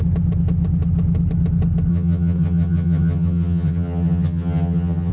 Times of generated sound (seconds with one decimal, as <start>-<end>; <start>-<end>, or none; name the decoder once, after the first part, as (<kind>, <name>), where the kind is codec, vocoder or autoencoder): 1.9-5.1 (vocoder, HiFi-GAN)

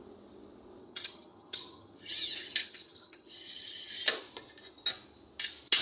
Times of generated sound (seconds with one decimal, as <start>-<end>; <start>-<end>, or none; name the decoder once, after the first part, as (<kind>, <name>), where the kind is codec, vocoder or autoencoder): 0.8-2.1 (vocoder, HiFi-GAN); 2.6-3.9

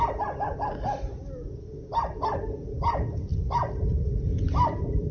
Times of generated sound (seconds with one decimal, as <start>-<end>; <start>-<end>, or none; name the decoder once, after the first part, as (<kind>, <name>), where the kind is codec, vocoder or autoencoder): none

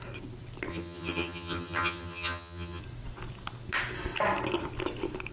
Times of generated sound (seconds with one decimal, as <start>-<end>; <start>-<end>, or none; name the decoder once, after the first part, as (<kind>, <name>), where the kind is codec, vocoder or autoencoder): 0.7-2.8 (vocoder, HiFi-GAN)

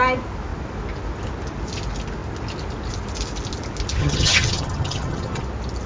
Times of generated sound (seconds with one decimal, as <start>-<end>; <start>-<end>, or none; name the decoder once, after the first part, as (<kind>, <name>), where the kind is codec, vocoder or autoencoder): 4.0-5.4 (vocoder, HiFi-GAN)

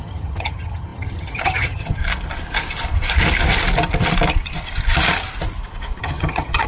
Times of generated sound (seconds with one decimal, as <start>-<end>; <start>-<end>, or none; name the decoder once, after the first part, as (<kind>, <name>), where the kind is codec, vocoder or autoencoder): 0.0-2.0 (vocoder, HiFi-GAN); 6.0-6.7

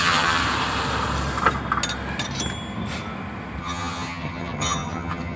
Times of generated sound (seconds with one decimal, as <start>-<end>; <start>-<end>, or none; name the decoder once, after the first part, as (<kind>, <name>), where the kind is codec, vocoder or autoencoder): 0.0-0.4 (vocoder, HiFi-GAN); 3.6-5.4

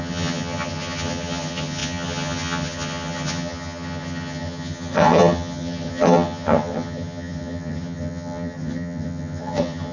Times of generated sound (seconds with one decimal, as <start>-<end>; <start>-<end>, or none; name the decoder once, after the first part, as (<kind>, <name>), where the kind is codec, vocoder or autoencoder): 0.0-9.9 (vocoder, HiFi-GAN)